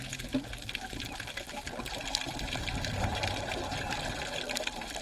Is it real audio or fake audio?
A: real